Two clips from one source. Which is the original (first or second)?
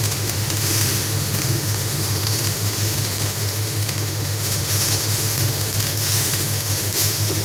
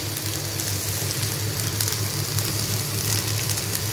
second